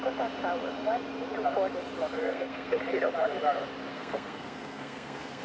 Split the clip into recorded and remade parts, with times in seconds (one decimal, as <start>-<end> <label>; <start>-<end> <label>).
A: 0.0-2.2 recorded; 2.2-2.8 remade; 2.8-3.9 recorded; 3.9-5.4 remade